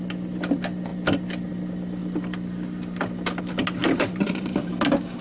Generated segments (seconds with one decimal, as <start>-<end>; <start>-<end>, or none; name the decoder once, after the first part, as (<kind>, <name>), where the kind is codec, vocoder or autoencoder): 3.8-4.7 (vocoder, BigVGAN v2)